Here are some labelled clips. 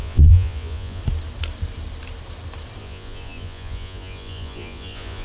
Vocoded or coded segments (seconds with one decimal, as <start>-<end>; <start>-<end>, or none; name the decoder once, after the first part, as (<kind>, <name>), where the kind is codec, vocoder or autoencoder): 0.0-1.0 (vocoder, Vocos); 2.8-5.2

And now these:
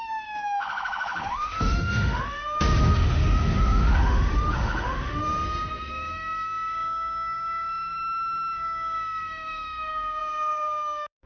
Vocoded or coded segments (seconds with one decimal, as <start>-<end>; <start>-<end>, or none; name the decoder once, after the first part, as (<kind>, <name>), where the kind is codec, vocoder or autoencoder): 0.0-11.3 (autoencoder, DAC-VAE)

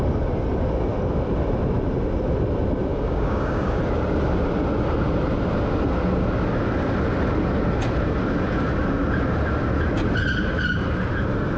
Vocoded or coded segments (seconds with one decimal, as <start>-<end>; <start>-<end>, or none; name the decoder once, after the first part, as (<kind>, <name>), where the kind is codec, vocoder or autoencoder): 2.9-3.8 (codec, DAC)